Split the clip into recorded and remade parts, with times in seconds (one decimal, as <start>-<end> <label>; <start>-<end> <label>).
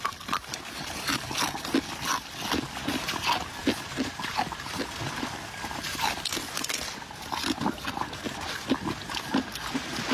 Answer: 0.0-10.1 recorded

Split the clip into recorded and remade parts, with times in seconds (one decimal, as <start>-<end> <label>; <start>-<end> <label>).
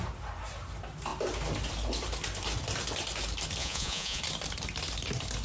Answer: 0.0-3.6 recorded; 3.6-4.2 remade; 4.2-5.4 recorded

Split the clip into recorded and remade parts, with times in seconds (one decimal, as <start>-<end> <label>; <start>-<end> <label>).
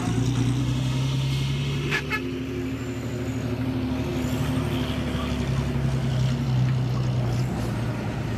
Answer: 0.0-0.6 recorded; 0.6-2.0 remade; 2.0-8.4 recorded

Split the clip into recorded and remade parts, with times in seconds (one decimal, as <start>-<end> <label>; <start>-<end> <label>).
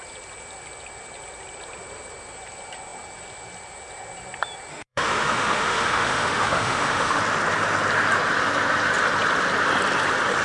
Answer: 0.0-4.7 recorded; 4.7-7.2 remade; 7.2-10.4 recorded